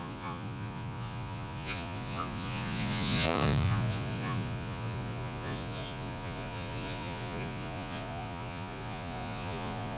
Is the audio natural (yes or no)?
no